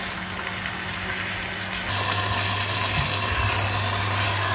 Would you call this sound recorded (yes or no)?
yes